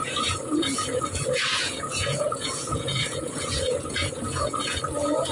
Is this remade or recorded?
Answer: remade